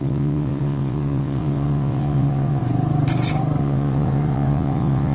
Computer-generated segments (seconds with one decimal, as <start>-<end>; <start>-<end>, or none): 0.0-2.6; 3.6-5.1